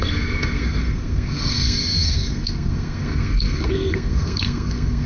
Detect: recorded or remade remade